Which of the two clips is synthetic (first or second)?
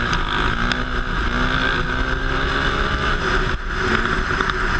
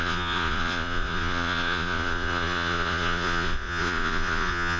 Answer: second